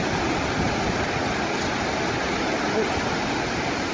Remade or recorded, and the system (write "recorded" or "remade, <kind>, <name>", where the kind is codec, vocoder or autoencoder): recorded